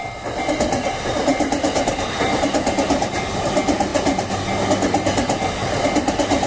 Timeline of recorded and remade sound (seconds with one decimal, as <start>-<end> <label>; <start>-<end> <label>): 0.0-6.5 recorded